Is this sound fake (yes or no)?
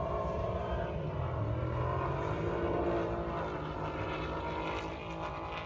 no